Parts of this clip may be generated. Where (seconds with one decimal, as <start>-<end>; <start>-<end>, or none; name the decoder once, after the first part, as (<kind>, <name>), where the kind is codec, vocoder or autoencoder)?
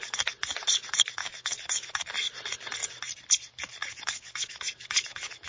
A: 1.2-2.1 (autoencoder, DAC-VAE); 3.8-5.5